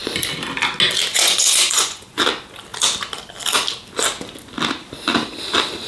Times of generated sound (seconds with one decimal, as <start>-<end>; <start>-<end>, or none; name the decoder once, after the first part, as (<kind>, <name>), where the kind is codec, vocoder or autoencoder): 1.1-2.2 (vocoder, Vocos)